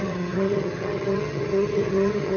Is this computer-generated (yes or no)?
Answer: yes